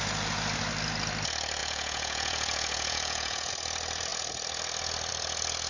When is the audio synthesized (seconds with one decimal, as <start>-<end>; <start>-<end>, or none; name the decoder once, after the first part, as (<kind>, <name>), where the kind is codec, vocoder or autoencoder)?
1.6-3.5 (vocoder, Vocos)